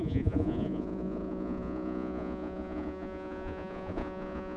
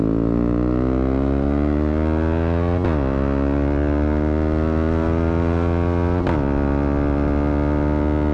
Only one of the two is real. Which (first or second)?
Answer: second